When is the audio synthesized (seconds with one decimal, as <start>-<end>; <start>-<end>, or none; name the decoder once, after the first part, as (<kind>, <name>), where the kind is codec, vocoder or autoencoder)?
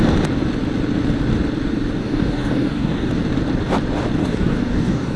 2.0-3.1 (codec, DAC); 4.2-5.2